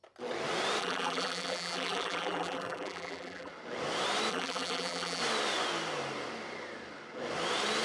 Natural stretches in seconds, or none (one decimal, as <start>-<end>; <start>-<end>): 0.0-0.8; 3.5-4.3; 5.2-7.8